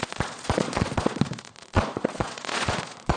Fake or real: fake